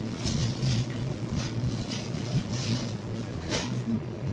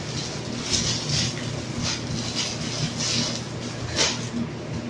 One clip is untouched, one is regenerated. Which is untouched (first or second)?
second